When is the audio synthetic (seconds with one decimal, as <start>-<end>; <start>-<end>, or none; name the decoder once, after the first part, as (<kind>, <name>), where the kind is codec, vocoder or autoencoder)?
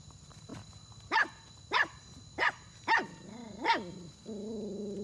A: none